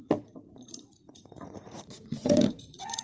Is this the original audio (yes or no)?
no